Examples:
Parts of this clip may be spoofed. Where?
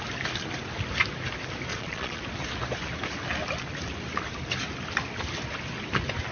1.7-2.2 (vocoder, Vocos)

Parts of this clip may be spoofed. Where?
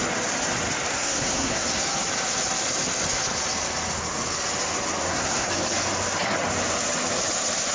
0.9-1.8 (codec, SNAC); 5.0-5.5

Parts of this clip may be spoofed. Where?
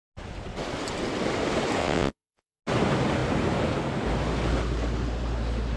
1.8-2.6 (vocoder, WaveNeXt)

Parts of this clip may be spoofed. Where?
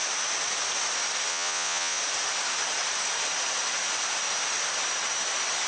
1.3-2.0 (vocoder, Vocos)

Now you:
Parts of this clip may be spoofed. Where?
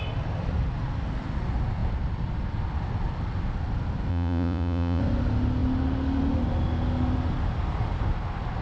4.1-5.0 (vocoder, Vocos)